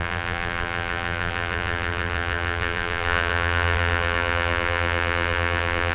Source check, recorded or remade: remade